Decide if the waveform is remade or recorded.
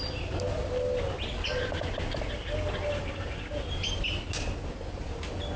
recorded